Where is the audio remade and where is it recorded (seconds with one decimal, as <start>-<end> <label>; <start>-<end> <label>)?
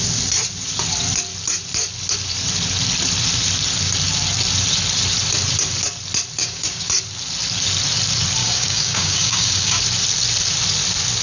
0.0-6.4 recorded; 6.4-6.9 remade; 6.9-8.4 recorded; 8.4-9.8 remade; 9.8-11.2 recorded